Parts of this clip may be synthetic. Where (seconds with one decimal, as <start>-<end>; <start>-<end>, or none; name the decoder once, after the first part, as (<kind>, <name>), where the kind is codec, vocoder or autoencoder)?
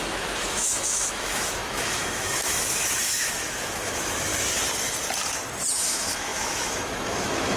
0.0-4.3 (autoencoder, DAC-VAE); 5.7-7.6